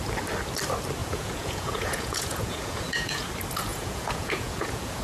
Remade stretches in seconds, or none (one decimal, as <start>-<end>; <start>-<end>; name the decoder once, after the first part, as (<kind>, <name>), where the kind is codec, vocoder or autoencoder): 1.0-3.3 (vocoder, Vocos); 3.7-5.0